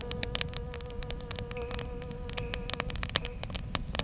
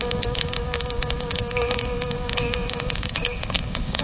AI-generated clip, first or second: second